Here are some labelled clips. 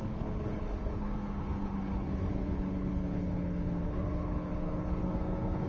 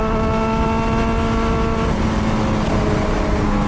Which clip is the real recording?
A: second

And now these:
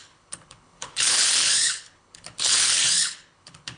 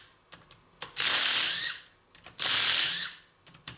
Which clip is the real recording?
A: second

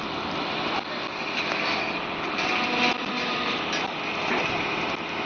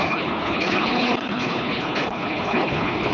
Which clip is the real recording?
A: first